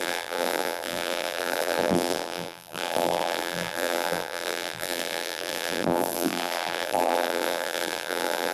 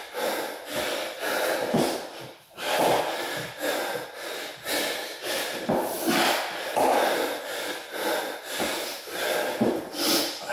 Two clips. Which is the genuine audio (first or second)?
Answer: second